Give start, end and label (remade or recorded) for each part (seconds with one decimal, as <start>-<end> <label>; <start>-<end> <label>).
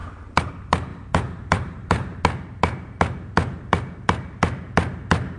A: 0.0-0.9 recorded; 0.9-2.2 remade; 2.2-5.4 recorded